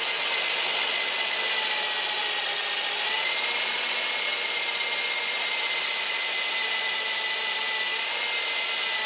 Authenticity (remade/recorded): recorded